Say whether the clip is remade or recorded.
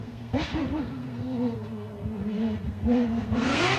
remade